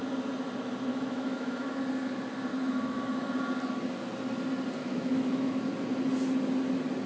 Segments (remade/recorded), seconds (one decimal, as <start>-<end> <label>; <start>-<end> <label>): 0.0-0.9 recorded; 0.9-1.8 remade; 1.8-2.5 recorded; 2.5-3.3 remade; 3.3-4.8 recorded; 4.8-5.6 remade; 5.6-7.1 recorded